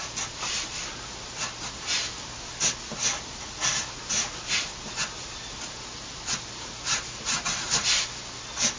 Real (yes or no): yes